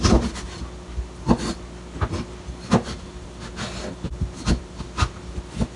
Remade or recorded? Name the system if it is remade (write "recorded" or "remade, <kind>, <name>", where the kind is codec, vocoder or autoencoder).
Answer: recorded